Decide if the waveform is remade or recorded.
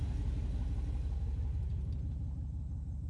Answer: recorded